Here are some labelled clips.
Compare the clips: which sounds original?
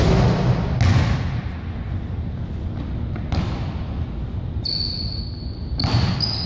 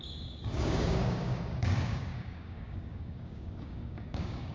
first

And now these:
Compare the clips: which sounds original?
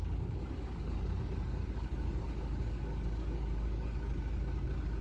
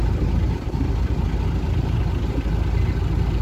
second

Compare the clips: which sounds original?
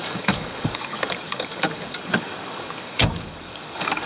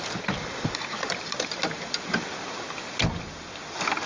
second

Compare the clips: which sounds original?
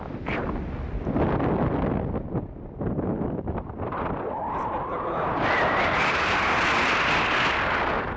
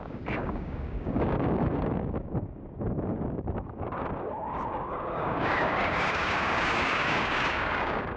first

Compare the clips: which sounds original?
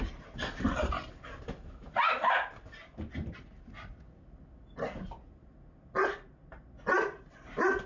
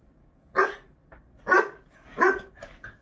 first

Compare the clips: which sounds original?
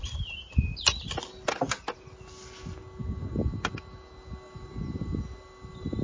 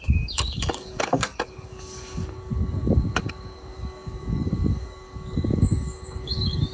first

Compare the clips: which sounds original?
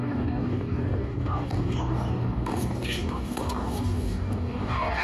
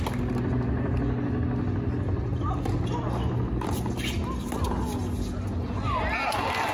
second